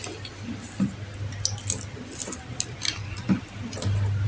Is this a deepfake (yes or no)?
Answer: no